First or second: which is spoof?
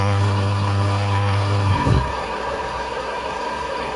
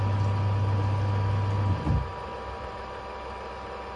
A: first